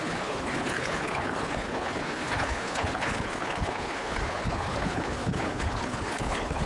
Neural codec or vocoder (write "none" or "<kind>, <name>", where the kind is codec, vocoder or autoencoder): codec, HILCodec